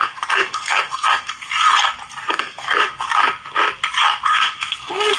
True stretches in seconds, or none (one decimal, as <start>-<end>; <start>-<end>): 1.5-2.3; 3.1-4.3